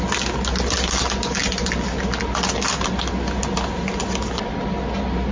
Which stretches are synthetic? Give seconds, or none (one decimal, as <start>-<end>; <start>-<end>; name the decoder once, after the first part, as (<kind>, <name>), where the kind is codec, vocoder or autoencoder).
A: none

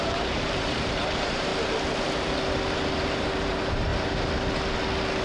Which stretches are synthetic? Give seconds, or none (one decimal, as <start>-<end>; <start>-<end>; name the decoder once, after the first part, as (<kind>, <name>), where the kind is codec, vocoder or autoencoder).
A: 0.0-1.5 (vocoder, BigVGAN v2); 2.9-3.9

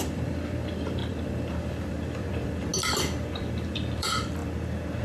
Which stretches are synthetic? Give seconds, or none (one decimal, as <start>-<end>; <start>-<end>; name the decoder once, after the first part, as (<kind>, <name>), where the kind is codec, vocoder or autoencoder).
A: 0.0-2.7 (vocoder, BigVGAN v2); 3.3-4.4

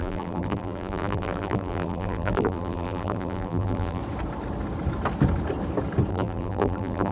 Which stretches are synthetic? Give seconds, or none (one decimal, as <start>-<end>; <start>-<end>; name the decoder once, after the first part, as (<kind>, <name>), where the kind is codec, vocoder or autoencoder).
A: 0.0-4.0 (vocoder, BigVGAN v2); 6.1-7.1

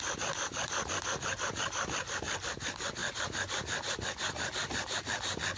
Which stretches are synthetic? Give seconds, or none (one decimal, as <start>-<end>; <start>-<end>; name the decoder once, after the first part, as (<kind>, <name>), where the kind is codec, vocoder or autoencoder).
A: none

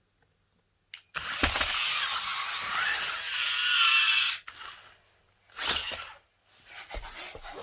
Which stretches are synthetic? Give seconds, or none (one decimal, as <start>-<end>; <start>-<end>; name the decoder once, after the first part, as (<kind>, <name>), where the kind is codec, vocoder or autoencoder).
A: none